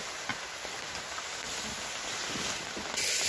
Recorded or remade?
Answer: recorded